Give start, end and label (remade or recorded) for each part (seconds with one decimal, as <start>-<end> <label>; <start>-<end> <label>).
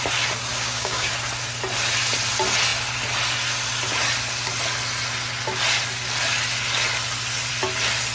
0.0-0.5 recorded; 0.5-1.1 remade; 1.1-8.1 recorded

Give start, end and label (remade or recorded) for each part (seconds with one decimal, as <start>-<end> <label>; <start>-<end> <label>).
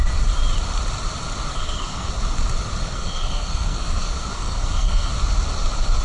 0.0-1.5 recorded; 1.5-2.1 remade; 2.1-2.8 recorded; 2.8-5.1 remade; 5.1-6.0 recorded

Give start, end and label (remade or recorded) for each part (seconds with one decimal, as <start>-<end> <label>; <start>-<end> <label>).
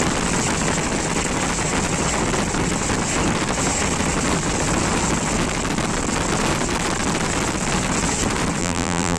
0.0-8.6 recorded; 8.6-9.2 remade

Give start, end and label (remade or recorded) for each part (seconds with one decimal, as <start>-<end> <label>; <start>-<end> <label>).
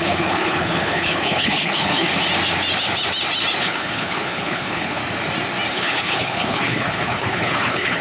0.0-2.1 remade; 2.1-3.6 recorded; 3.6-5.0 remade; 5.0-5.7 recorded; 5.7-8.0 remade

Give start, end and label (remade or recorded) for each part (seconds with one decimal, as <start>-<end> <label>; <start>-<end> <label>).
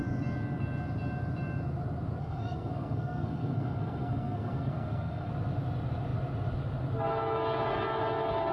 0.0-2.2 recorded; 2.2-5.3 remade; 5.3-8.5 recorded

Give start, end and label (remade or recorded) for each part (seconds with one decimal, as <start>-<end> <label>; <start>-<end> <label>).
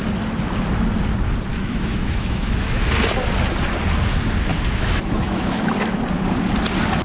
0.0-1.5 recorded; 1.5-2.8 remade; 2.8-4.5 recorded; 4.5-5.9 remade; 5.9-7.0 recorded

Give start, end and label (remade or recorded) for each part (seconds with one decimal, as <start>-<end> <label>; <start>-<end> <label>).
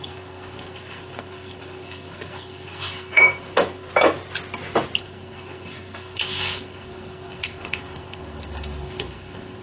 0.0-3.9 remade; 3.9-5.0 recorded; 5.0-9.6 remade